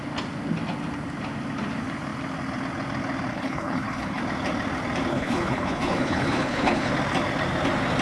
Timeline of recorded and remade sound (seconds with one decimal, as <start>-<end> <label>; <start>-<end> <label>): 0.0-3.3 recorded; 3.3-4.2 remade; 4.2-5.1 recorded; 5.1-6.9 remade; 6.9-8.0 recorded